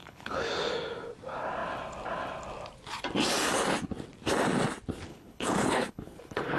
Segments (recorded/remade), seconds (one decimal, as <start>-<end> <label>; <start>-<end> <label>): 0.0-0.7 remade; 0.7-5.1 recorded; 5.1-6.6 remade